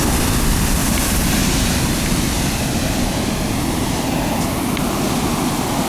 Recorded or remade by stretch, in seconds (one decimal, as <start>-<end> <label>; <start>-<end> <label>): 0.0-5.9 recorded